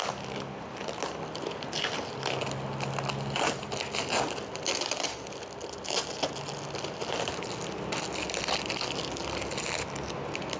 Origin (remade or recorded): recorded